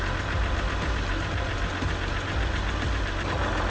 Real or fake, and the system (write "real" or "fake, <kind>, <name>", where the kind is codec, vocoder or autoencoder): real